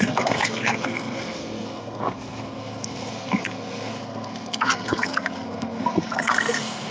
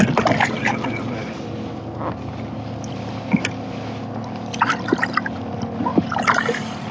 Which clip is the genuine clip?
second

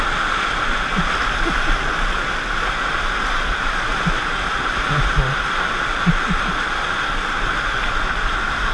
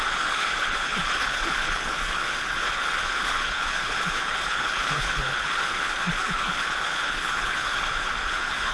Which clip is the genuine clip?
first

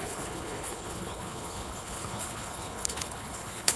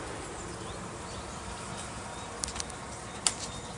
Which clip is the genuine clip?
second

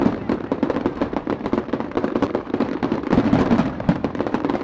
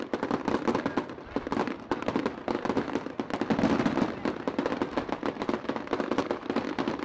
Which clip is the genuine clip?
second